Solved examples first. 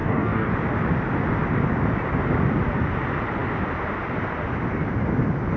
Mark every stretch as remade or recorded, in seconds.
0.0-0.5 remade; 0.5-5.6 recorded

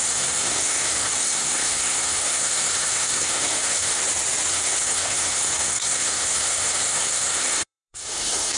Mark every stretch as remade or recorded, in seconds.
0.0-4.0 remade; 4.0-4.5 recorded; 4.5-8.6 remade

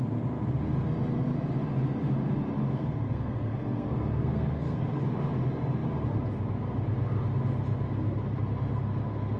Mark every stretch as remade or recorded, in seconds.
0.0-2.7 recorded; 2.7-5.0 remade; 5.0-9.4 recorded

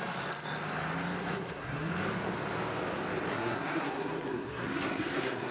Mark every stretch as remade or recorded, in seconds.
0.0-1.2 recorded; 1.2-1.9 remade; 1.9-3.3 recorded; 3.3-5.5 remade